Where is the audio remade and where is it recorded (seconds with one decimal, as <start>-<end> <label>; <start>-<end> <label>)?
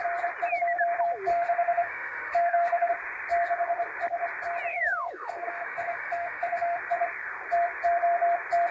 0.0-1.3 recorded; 1.3-2.9 remade; 2.9-4.7 recorded; 4.7-6.8 remade; 6.8-8.7 recorded